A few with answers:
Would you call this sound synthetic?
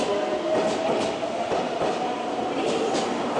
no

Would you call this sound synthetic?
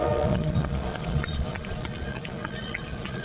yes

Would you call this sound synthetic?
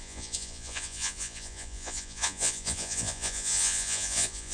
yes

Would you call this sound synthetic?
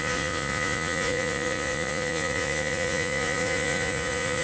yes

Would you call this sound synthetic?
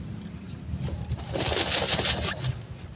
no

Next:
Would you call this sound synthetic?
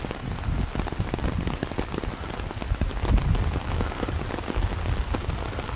no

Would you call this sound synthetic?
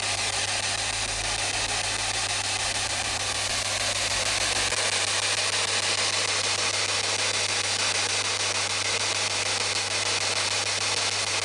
no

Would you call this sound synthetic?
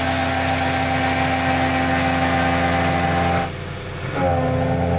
no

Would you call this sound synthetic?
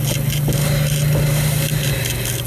no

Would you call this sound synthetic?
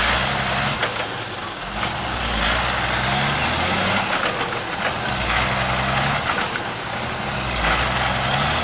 no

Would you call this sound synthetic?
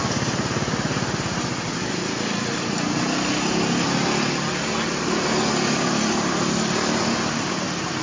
no